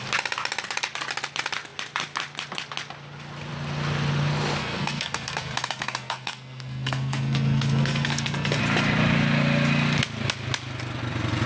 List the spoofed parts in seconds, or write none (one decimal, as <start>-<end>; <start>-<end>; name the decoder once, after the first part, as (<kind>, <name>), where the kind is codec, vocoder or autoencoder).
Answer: 4.6-8.6 (codec, SNAC)